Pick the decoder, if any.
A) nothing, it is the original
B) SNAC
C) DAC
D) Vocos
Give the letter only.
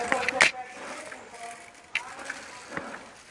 A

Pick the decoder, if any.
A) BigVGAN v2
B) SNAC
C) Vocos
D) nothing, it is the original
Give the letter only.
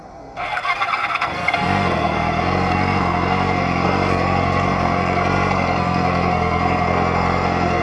B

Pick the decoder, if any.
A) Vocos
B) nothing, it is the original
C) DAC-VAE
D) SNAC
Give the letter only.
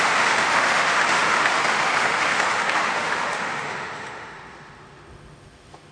C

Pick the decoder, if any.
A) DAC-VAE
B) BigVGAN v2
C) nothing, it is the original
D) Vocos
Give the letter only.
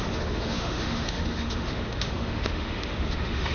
A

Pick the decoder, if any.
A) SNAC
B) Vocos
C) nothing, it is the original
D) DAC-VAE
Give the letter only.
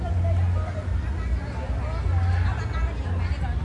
C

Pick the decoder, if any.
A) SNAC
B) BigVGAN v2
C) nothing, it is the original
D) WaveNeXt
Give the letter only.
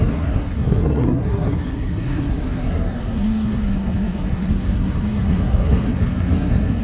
A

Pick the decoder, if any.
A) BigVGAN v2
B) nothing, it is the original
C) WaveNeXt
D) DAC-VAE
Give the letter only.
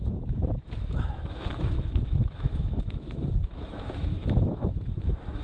D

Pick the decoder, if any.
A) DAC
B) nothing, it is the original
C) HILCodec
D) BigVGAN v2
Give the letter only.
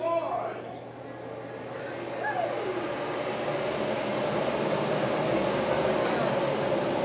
B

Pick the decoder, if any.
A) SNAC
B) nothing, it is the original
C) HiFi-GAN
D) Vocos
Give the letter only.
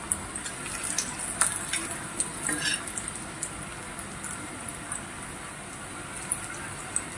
B